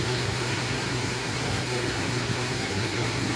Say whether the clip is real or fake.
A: fake